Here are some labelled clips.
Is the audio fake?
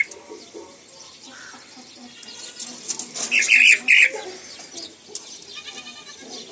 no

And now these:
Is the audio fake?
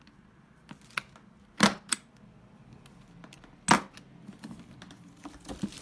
no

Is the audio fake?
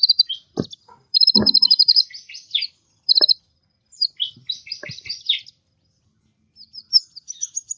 no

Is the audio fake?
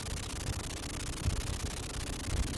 no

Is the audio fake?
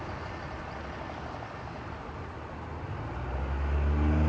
no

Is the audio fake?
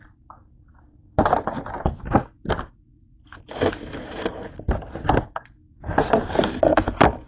no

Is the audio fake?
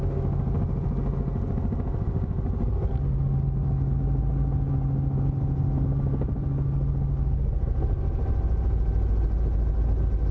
no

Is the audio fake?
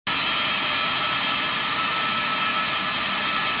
no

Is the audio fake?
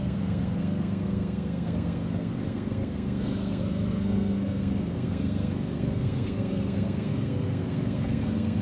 yes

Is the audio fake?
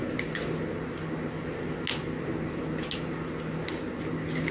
no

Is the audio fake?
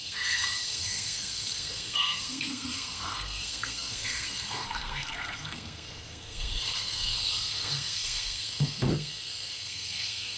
yes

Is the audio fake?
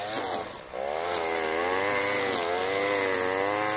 no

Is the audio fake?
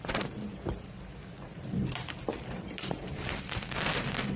yes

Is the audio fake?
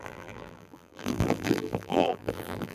yes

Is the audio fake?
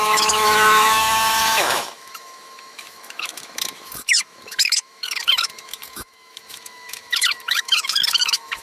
yes